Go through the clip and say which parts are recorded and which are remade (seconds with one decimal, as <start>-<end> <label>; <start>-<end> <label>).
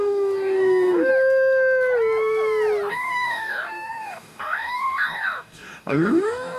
0.0-1.1 remade; 1.1-2.9 recorded; 2.9-6.6 remade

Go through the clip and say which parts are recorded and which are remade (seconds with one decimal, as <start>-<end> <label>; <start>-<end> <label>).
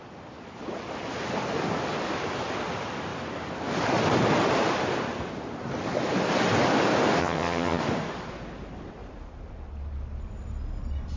0.0-7.2 recorded; 7.2-7.8 remade; 7.8-11.2 recorded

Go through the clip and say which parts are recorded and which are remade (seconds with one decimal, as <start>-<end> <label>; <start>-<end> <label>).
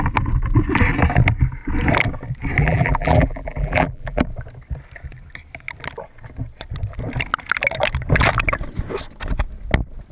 0.0-2.6 recorded; 2.6-4.2 remade; 4.2-10.1 recorded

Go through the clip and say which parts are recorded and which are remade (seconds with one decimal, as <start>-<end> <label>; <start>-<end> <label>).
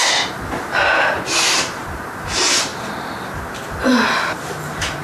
0.0-2.7 remade; 2.7-4.3 recorded; 4.3-5.0 remade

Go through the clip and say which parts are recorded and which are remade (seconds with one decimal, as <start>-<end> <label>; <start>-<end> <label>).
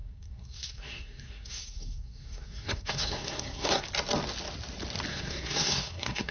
0.0-3.8 remade; 3.8-5.1 recorded; 5.1-6.3 remade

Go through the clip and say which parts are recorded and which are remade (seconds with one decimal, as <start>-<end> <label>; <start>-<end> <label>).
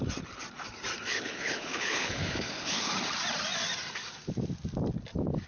0.0-1.1 recorded; 1.1-2.9 remade; 2.9-5.5 recorded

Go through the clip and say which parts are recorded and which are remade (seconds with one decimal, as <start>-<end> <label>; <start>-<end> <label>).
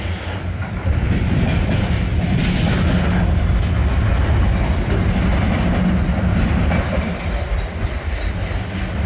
0.0-0.6 recorded; 0.6-2.4 remade; 2.4-9.1 recorded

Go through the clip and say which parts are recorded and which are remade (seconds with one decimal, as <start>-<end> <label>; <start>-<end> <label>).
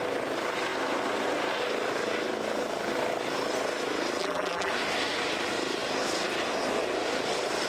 0.0-4.2 recorded; 4.2-4.7 remade; 4.7-7.7 recorded